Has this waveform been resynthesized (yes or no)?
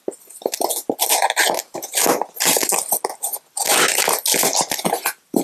no